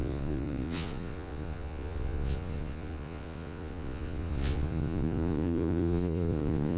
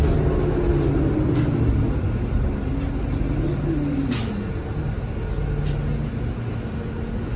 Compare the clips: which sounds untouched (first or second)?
second